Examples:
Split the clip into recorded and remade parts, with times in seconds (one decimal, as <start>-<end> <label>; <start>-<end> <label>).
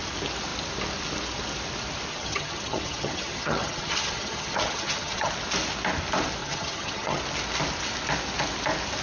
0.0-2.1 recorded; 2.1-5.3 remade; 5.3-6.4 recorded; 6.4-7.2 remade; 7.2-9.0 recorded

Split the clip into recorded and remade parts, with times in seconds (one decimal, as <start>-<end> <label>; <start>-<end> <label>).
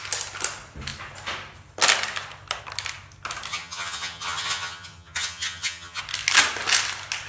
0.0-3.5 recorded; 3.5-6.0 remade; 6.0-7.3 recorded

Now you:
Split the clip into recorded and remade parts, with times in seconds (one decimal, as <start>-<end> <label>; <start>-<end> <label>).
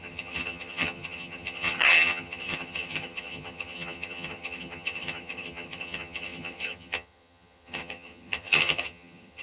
0.0-9.4 remade